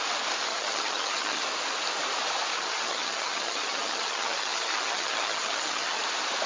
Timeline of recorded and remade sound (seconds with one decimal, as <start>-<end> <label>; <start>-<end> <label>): 0.0-0.5 recorded; 0.5-1.4 remade; 1.4-2.5 recorded; 2.5-6.0 remade; 6.0-6.5 recorded